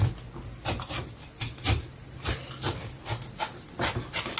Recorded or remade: recorded